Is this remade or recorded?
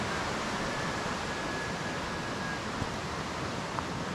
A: recorded